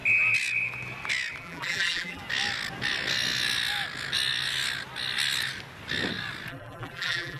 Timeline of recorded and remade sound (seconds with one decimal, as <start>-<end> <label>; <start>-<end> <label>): 0.0-1.4 recorded; 1.4-2.2 remade; 2.2-6.5 recorded; 6.5-7.4 remade